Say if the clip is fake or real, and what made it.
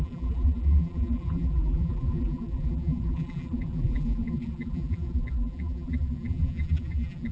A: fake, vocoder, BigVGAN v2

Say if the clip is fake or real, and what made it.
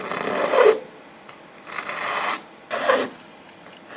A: real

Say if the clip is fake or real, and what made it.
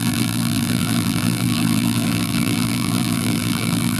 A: fake, vocoder, BigVGAN v2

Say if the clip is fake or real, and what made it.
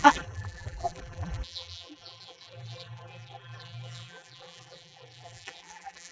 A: fake, vocoder, BigVGAN v2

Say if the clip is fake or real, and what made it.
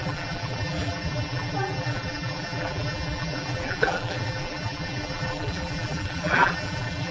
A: fake, vocoder, BigVGAN v2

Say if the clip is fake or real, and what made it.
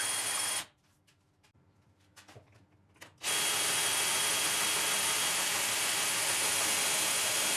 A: real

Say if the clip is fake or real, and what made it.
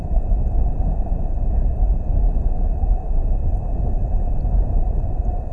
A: fake, vocoder, BigVGAN v2